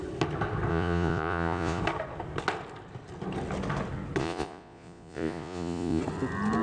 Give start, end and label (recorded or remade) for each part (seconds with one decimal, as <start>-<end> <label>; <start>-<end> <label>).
0.0-0.7 recorded; 0.7-1.8 remade; 1.8-4.2 recorded; 4.2-6.0 remade; 6.0-6.6 recorded